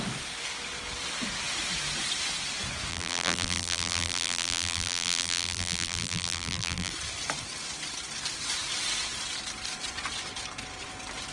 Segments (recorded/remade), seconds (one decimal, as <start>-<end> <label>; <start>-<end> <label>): 0.0-2.9 recorded; 2.9-6.9 remade; 6.9-11.3 recorded